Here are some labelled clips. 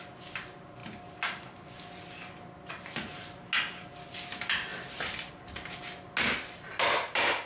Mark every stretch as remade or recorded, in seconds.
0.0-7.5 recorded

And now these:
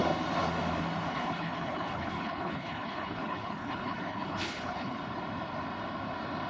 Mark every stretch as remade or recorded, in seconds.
0.0-1.1 recorded; 1.1-5.0 remade; 5.0-6.5 recorded